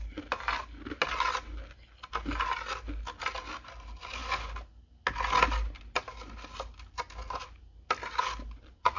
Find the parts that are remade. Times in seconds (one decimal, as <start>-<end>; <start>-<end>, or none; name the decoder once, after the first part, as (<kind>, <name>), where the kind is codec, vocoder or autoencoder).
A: none